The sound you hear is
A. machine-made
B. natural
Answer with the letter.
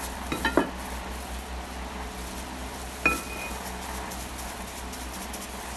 B